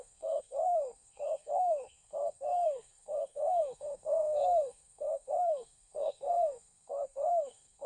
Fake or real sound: fake